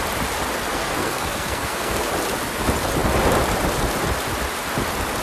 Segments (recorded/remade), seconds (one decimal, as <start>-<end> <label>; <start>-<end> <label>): 0.0-0.7 recorded; 0.7-2.1 remade; 2.1-5.2 recorded